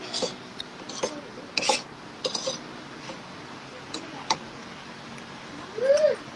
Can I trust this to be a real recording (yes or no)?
yes